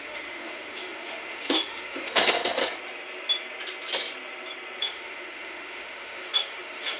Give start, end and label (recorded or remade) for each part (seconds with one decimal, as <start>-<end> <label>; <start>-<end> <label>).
0.0-2.6 remade; 2.6-4.8 recorded; 4.8-7.0 remade